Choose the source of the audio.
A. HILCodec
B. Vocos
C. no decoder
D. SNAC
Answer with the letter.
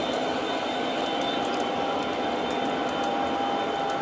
C